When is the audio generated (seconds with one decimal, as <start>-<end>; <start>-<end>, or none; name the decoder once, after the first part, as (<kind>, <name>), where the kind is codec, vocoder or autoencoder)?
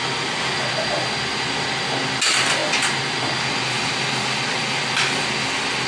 none